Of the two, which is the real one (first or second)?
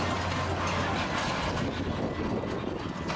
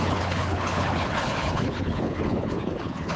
first